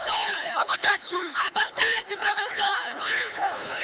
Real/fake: fake